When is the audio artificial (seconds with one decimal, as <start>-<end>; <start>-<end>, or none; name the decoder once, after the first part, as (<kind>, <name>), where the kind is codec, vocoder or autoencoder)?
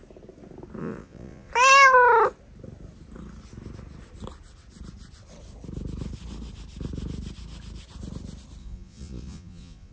0.8-1.5 (vocoder, Vocos); 8.6-9.9